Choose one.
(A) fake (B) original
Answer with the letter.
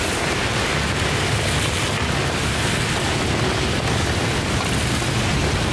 B